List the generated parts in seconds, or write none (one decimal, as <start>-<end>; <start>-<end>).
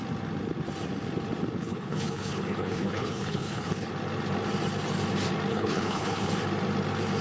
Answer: 1.6-3.9; 5.5-6.3